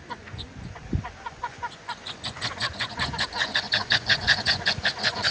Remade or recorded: remade